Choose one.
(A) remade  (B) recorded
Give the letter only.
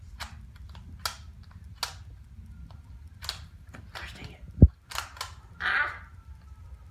B